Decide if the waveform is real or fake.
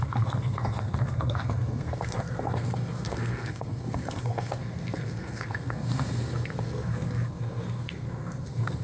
fake